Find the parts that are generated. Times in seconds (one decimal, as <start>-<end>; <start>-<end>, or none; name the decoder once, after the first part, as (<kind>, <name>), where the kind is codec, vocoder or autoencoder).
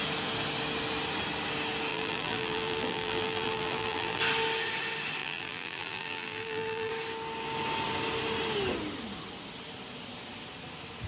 1.9-4.2 (vocoder, BigVGAN v2); 5.2-6.9